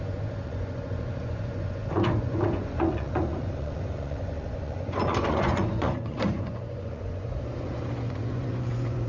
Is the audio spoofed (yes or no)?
yes